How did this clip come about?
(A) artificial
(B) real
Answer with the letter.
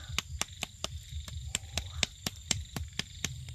B